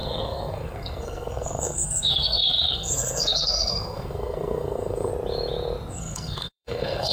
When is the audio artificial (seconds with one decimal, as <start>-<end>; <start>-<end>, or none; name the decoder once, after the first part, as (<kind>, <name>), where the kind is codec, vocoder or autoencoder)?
0.0-5.1 (codec, SNAC); 5.9-7.1

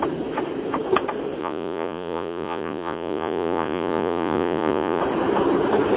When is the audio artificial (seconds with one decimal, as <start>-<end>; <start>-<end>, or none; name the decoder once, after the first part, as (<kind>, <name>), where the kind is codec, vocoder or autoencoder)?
1.4-5.0 (vocoder, Vocos)

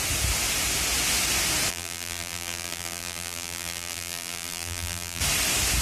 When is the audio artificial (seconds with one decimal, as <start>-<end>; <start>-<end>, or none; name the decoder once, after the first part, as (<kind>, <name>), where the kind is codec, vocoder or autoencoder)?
1.7-5.2 (vocoder, BigVGAN v2)

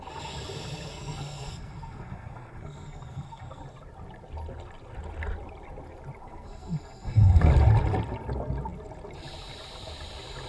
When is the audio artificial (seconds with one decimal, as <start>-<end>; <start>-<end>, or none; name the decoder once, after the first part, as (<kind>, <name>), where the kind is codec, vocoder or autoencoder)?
0.9-3.6 (codec, SNAC); 6.2-7.5

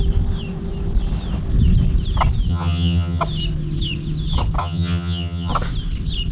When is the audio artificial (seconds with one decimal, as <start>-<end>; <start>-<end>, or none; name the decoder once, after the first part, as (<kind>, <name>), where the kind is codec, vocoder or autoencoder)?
2.5-3.2 (vocoder, HiFi-GAN); 4.6-5.5

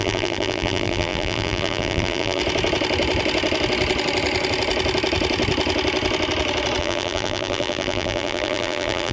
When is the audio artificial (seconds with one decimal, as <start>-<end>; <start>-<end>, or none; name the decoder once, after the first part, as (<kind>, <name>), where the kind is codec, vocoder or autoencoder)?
0.0-2.4 (vocoder, BigVGAN v2); 6.8-9.1

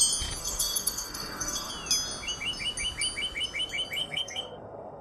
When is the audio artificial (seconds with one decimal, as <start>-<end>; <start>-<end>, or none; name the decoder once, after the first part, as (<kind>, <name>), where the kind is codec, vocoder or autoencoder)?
0.4-1.7 (codec, SNAC); 4.0-5.0

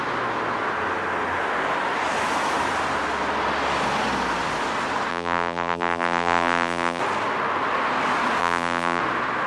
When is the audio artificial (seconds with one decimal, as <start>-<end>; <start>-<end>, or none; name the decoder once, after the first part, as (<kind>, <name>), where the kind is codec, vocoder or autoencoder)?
5.1-7.0 (vocoder, BigVGAN v2); 8.4-9.0